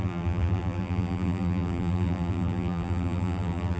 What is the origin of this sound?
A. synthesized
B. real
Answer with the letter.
A